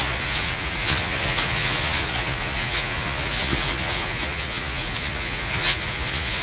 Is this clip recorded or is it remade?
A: remade